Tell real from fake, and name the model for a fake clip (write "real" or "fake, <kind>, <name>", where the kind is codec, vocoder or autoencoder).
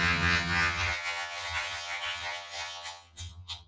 fake, vocoder, HiFi-GAN